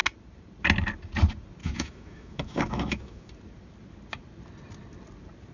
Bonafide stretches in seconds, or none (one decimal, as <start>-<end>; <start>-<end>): 0.0-1.6; 3.3-5.5